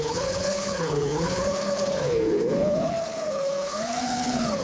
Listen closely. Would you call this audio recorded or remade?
remade